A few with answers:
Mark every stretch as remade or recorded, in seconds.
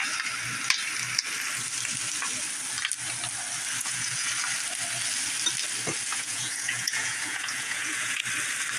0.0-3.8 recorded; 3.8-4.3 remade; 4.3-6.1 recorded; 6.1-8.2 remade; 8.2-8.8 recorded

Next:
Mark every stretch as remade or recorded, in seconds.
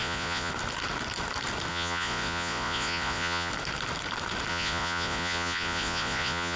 0.0-0.5 remade; 0.5-1.7 recorded; 1.7-3.5 remade; 3.5-4.5 recorded; 4.5-6.6 remade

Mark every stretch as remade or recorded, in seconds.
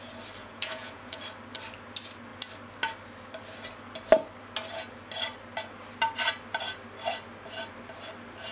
0.0-0.4 recorded; 0.4-1.2 remade; 1.2-8.5 recorded